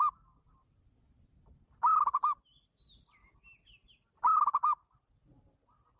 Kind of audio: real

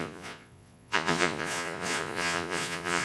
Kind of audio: fake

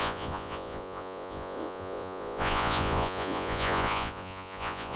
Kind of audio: fake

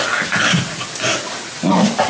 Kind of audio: real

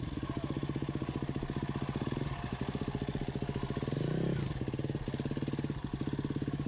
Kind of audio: real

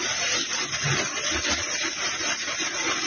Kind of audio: real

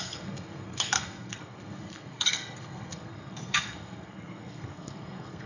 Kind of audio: fake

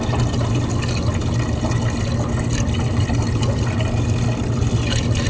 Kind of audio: real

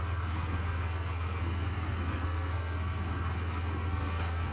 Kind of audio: fake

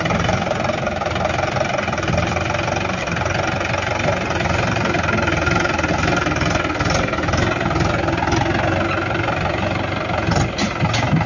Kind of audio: real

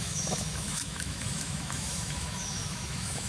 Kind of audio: fake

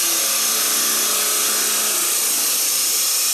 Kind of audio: real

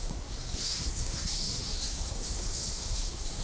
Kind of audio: fake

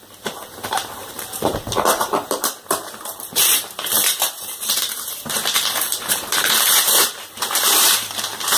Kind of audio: fake